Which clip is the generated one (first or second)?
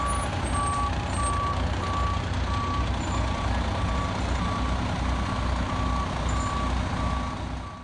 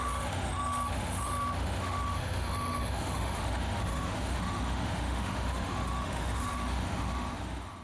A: second